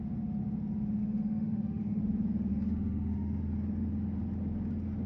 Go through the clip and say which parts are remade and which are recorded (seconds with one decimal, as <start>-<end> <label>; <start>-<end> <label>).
0.0-1.0 recorded; 1.0-2.0 remade; 2.0-2.5 recorded; 2.5-3.4 remade; 3.4-5.1 recorded